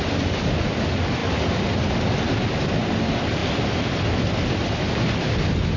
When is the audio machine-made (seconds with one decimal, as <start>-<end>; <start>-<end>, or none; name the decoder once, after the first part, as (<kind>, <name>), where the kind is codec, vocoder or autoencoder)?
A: none